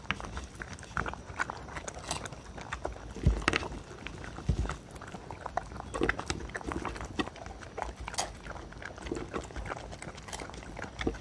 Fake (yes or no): no